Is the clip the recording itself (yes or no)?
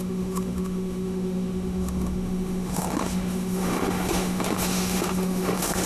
no